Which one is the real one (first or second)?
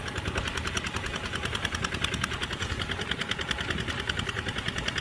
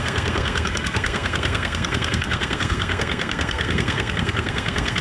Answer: first